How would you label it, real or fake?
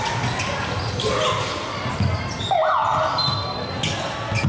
real